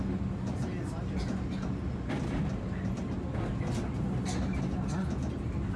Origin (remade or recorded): recorded